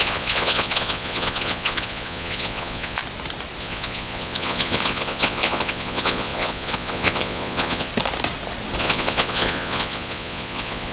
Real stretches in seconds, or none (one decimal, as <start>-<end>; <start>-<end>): 3.0-3.6; 7.9-8.8